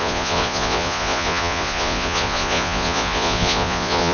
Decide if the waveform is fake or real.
fake